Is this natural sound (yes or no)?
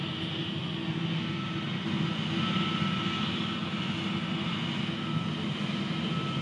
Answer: yes